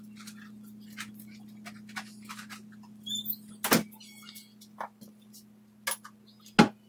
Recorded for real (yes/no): yes